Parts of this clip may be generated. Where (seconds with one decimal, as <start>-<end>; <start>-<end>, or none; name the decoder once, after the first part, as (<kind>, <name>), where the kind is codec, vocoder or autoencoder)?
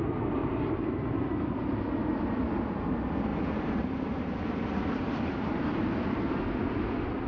0.4-1.2 (vocoder, BigVGAN v2); 3.3-6.2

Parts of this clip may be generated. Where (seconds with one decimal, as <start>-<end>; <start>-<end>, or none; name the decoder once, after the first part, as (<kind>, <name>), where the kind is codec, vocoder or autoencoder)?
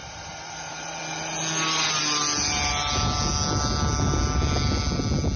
0.0-1.0 (vocoder, BigVGAN v2)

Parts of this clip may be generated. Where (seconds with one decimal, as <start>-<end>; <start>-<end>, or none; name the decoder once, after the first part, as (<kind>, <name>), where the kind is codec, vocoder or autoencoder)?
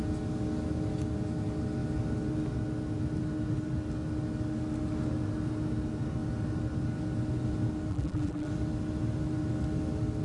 7.9-8.5 (vocoder, BigVGAN v2)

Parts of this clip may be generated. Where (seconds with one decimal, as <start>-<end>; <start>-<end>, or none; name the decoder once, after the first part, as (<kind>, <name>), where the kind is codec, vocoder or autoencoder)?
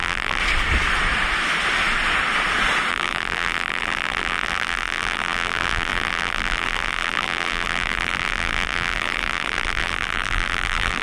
0.0-0.4 (vocoder, BigVGAN v2); 2.9-11.0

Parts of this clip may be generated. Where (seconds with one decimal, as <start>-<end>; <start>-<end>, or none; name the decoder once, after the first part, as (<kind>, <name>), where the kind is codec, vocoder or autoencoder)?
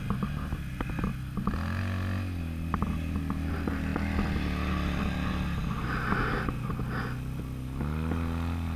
none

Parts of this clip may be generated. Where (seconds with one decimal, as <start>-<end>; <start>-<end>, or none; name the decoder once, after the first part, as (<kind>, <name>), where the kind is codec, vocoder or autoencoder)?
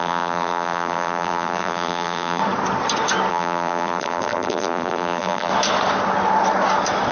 0.0-2.4 (vocoder, BigVGAN v2); 3.3-5.5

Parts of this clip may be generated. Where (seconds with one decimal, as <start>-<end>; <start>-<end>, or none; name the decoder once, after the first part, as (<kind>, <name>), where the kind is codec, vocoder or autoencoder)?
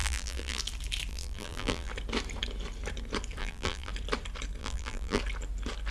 0.0-0.6 (vocoder, BigVGAN v2); 1.1-1.9; 3.4-3.9; 4.6-5.2